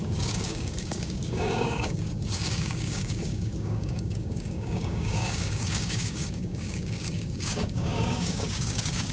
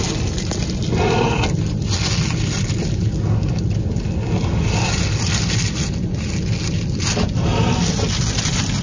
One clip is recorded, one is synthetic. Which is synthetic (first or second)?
first